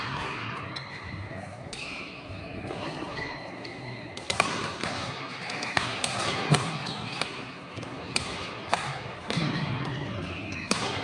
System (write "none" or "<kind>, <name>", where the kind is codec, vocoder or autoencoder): codec, SNAC